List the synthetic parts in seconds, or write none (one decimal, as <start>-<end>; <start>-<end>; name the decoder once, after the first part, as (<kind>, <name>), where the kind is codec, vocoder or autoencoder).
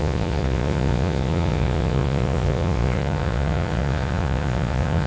0.0-5.1 (vocoder, Vocos)